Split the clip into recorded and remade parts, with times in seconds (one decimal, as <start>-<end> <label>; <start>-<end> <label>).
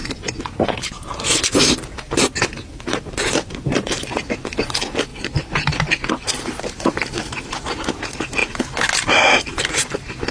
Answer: 0.0-5.1 recorded; 5.1-7.6 remade; 7.6-10.3 recorded